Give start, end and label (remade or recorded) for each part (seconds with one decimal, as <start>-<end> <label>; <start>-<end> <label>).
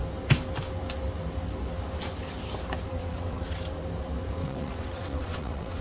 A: 0.0-2.9 recorded; 2.9-3.4 remade; 3.4-4.4 recorded; 4.4-5.8 remade